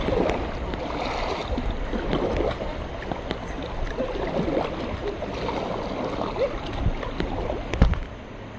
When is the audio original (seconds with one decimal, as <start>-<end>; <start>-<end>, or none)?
0.0-8.6